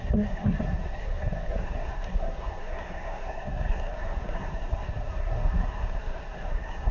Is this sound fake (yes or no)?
yes